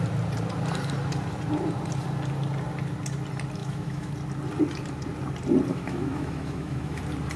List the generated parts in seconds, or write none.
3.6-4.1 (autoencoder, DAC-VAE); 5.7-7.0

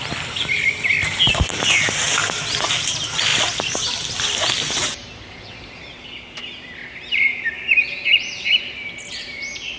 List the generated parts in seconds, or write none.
none